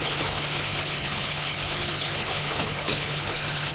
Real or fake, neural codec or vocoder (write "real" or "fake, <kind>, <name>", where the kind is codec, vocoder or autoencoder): fake, codec, HILCodec